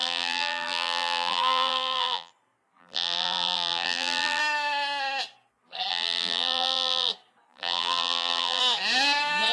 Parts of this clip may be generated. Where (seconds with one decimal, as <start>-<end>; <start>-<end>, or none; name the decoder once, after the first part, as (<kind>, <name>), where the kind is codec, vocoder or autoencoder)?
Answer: 0.0-2.3 (vocoder, BigVGAN v2); 2.8-4.4; 5.9-7.1; 7.5-8.6